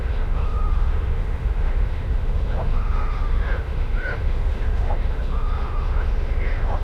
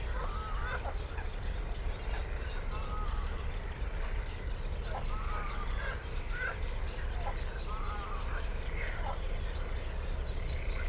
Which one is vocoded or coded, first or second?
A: first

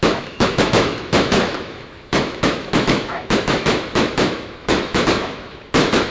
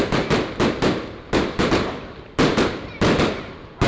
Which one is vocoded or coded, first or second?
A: first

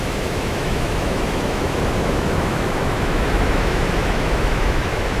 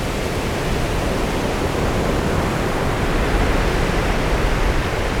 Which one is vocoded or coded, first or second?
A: first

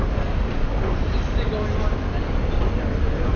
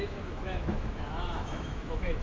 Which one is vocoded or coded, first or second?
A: second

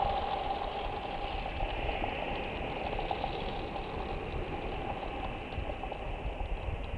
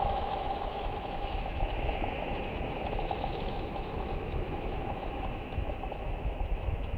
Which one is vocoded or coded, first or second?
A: second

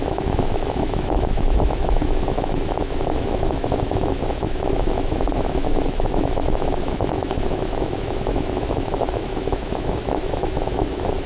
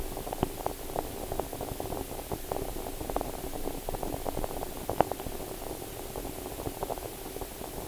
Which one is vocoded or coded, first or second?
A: first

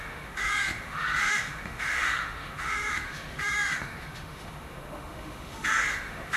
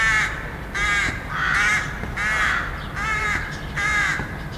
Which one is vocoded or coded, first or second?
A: first